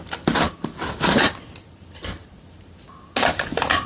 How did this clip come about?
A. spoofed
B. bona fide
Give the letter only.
B